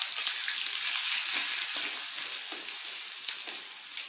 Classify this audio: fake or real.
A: real